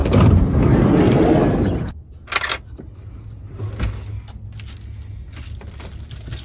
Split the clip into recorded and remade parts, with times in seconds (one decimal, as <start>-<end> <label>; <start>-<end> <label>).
0.0-6.4 recorded